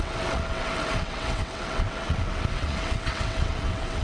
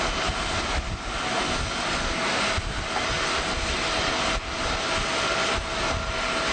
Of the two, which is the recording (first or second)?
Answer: second